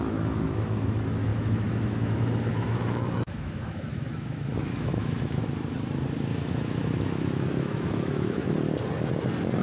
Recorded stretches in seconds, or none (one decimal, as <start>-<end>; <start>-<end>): 5.4-6.5; 8.4-9.6